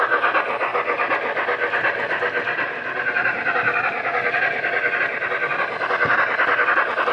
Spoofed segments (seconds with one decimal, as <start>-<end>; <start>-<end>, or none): none